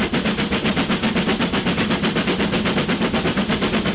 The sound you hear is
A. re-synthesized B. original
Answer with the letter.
B